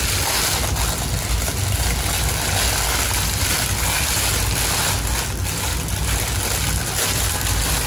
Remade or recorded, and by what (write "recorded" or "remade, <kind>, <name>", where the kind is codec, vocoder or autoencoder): recorded